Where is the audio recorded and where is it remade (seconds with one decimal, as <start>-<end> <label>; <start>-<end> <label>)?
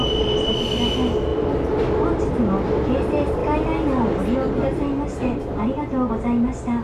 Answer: 0.0-1.3 recorded; 1.3-1.9 remade; 1.9-6.8 recorded